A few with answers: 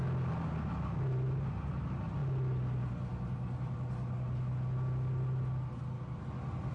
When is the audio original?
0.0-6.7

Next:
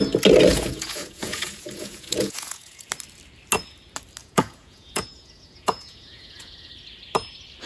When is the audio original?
0.0-0.5; 2.9-4.2; 6.7-7.7

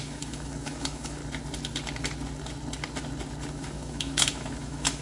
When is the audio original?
1.2-3.5

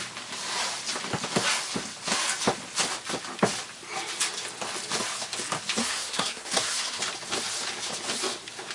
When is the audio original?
0.0-5.8; 7.0-8.7

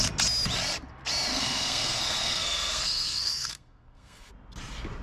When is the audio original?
0.0-1.3; 4.3-5.0

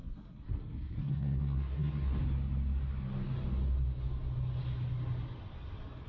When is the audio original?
2.2-6.1

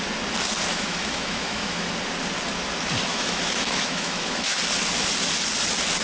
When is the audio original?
0.0-0.7; 1.9-3.1; 4.6-6.0

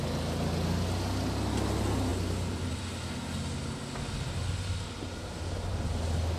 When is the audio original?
0.0-6.4